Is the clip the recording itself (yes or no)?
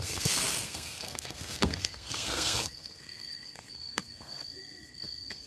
no